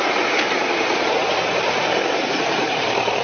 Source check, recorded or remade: remade